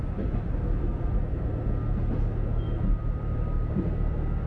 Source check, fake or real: real